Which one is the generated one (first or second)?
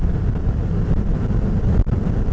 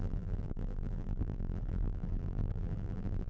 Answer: second